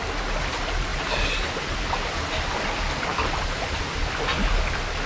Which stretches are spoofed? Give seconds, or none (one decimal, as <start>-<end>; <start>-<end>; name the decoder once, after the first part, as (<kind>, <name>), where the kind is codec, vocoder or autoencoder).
none